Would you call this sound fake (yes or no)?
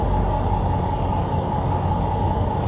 yes